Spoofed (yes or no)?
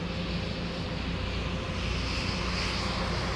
no